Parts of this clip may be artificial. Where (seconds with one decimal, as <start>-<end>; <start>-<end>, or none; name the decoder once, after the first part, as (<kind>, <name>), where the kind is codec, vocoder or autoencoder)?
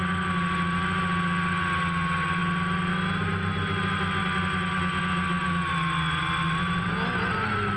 none